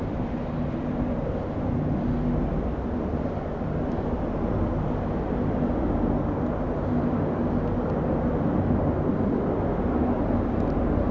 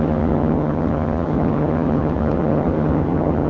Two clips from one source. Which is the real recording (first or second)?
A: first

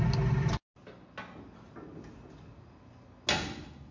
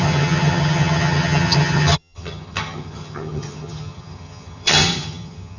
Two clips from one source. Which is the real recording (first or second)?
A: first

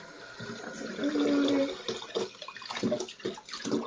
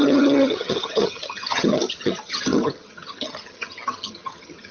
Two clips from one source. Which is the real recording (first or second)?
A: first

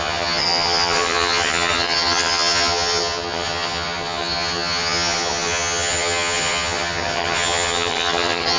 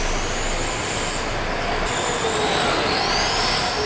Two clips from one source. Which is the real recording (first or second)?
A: second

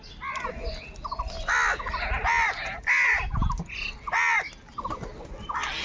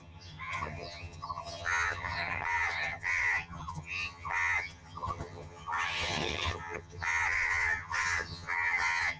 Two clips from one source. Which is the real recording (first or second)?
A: first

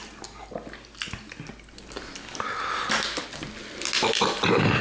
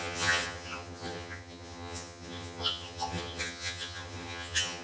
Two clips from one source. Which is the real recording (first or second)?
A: first